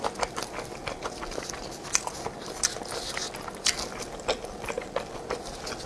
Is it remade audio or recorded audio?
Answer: recorded